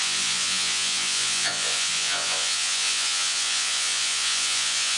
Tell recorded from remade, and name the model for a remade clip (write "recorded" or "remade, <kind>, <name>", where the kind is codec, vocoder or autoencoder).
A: remade, vocoder, Vocos